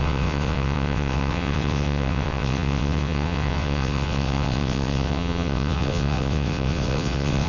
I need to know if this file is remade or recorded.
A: remade